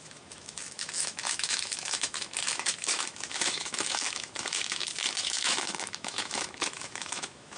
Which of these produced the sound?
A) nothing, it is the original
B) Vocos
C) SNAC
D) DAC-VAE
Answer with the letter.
D